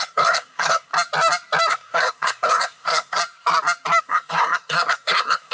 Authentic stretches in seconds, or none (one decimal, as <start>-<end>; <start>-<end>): 0.9-1.7; 3.2-4.0